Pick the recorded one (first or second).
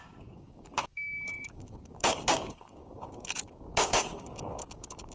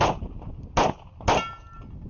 second